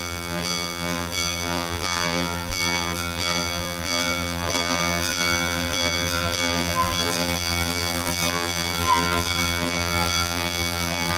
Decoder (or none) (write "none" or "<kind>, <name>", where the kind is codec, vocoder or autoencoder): vocoder, BigVGAN v2